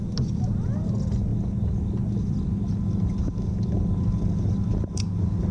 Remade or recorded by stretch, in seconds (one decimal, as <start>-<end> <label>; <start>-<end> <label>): 0.0-5.5 recorded